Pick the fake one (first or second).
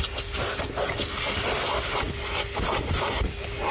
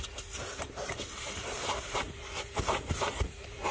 second